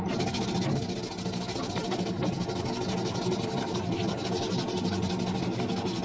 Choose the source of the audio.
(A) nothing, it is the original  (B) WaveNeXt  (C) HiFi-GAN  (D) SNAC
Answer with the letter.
A